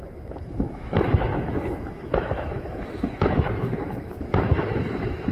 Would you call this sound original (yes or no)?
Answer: no